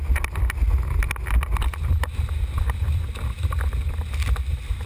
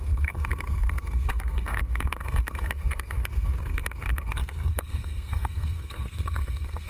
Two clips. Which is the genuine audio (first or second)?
first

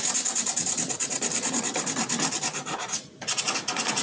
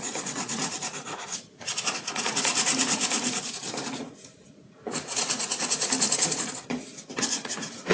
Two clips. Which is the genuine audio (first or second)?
first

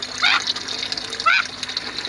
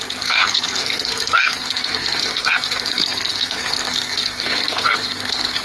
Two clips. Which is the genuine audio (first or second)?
first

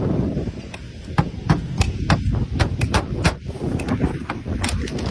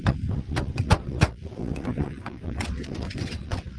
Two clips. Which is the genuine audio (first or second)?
first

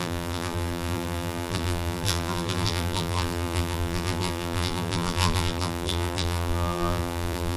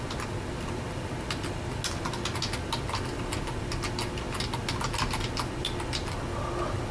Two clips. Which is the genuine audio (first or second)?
second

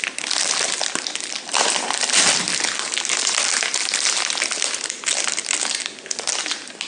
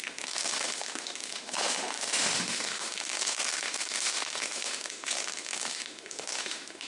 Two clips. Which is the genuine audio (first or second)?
first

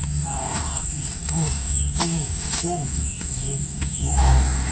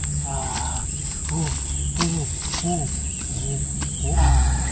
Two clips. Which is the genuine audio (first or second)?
second